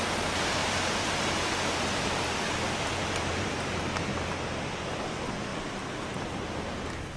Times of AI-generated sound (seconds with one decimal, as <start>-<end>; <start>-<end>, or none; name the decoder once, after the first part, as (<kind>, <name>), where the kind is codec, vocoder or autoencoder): 0.6-3.5 (vocoder, BigVGAN v2); 5.5-6.8